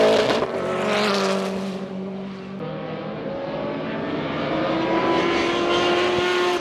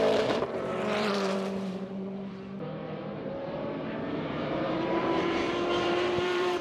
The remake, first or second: second